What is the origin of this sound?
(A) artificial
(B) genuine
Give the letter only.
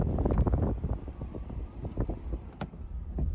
A